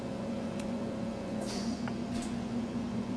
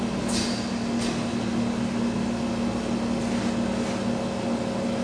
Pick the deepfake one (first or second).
first